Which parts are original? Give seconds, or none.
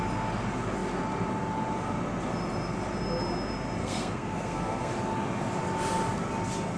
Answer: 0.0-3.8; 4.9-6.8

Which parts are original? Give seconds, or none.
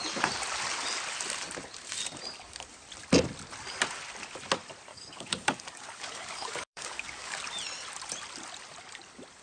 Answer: 0.0-4.9; 7.4-9.4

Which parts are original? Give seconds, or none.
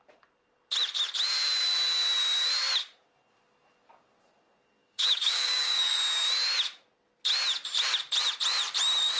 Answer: 0.0-4.8; 6.0-9.2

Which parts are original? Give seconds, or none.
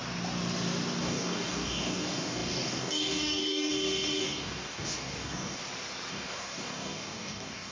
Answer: 0.0-1.0; 3.7-4.2; 5.6-6.1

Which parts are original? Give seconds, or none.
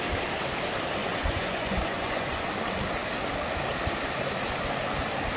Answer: 0.0-1.0; 2.5-5.4